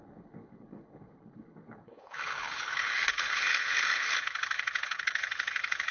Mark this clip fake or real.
fake